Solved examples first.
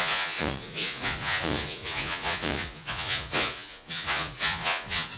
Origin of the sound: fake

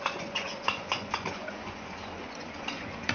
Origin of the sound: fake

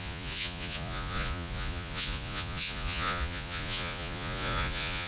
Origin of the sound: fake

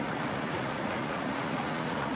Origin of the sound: fake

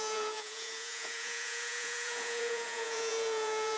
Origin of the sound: fake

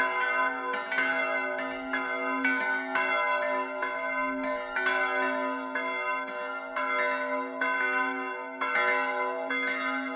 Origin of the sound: real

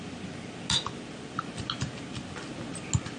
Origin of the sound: real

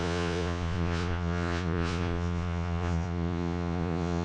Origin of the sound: fake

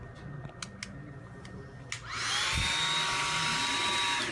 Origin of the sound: real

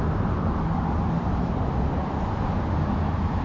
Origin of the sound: real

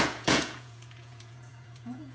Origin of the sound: fake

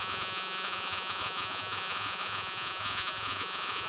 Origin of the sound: fake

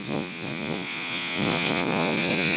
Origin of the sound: fake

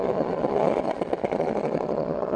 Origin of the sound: fake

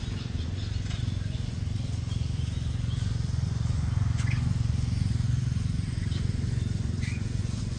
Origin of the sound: fake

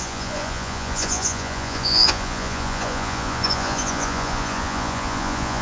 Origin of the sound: fake